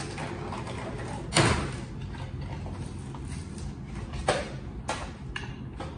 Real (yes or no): yes